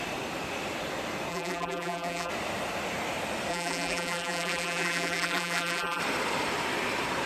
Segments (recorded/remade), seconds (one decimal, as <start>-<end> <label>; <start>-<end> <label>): 0.0-1.3 recorded; 1.3-2.3 remade; 2.3-3.5 recorded; 3.5-6.0 remade; 6.0-7.3 recorded